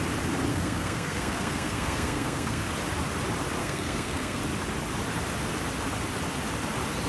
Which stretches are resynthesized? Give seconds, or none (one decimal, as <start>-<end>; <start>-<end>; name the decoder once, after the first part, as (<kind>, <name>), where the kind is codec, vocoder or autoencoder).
0.5-2.7 (codec, SNAC); 3.6-4.4